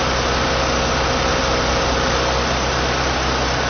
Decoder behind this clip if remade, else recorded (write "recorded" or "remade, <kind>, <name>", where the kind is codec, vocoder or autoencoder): recorded